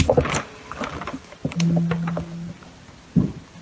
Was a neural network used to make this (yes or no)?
no